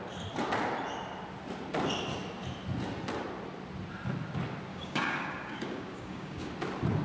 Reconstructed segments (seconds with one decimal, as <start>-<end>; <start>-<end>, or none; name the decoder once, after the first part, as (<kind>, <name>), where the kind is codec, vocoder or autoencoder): 4.7-6.5 (codec, DAC)